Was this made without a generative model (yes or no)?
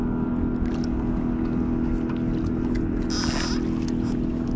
yes